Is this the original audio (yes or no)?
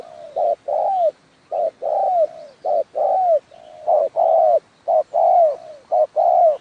yes